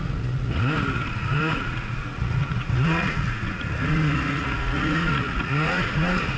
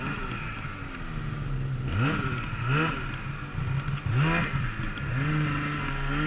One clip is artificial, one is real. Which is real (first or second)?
second